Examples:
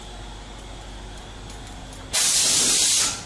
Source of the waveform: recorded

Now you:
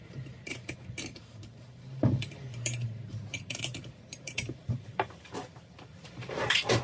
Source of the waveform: remade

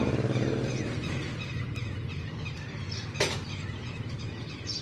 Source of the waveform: remade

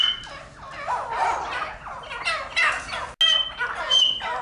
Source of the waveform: recorded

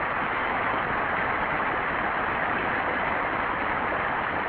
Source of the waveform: recorded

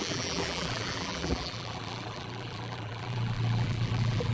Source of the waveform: remade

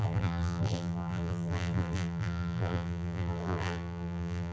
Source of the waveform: remade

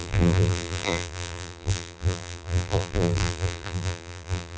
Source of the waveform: remade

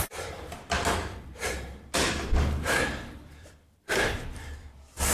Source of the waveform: remade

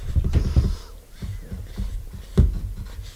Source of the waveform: recorded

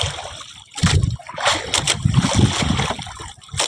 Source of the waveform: remade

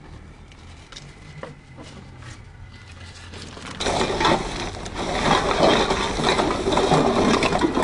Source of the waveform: recorded